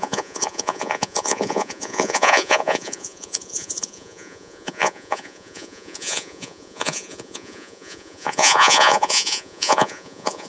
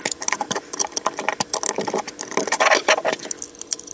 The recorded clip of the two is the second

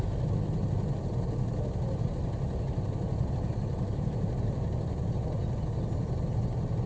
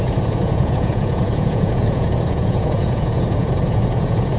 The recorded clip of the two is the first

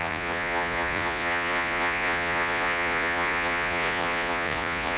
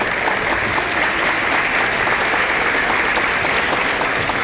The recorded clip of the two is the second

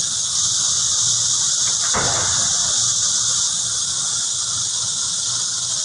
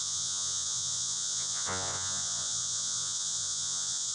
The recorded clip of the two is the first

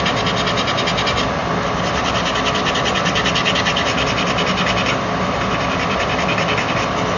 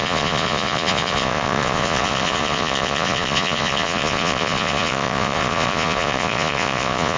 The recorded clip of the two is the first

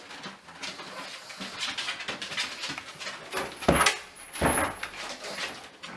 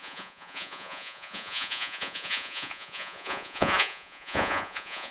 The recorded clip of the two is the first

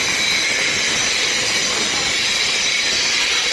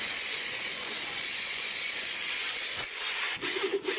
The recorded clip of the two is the first